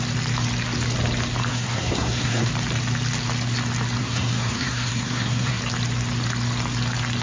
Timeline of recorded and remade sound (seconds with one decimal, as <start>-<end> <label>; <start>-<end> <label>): 0.0-1.5 recorded; 1.5-2.5 remade; 2.5-4.0 recorded; 4.0-5.6 remade; 5.6-7.2 recorded